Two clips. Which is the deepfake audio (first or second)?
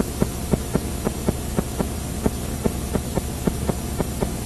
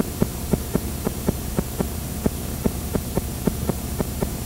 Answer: second